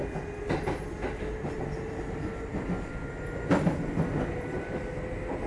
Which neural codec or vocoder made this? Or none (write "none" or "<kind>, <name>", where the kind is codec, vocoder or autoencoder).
none